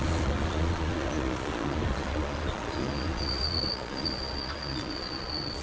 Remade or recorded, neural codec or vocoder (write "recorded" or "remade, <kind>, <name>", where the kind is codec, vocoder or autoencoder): remade, vocoder, Vocos